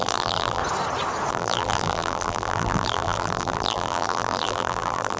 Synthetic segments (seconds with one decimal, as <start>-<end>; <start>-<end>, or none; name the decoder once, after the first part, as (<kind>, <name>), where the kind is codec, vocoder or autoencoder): 0.0-0.6 (vocoder, BigVGAN v2); 1.3-5.2